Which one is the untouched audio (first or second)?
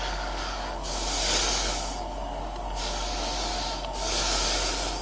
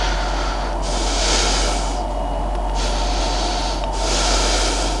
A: second